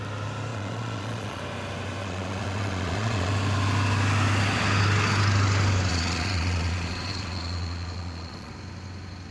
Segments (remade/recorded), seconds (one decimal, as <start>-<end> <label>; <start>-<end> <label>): 0.0-0.5 recorded; 0.5-1.4 remade; 1.4-2.0 recorded; 2.0-3.3 remade; 3.3-5.9 recorded; 5.9-8.5 remade; 8.5-9.3 recorded